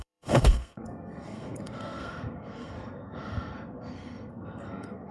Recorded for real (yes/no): no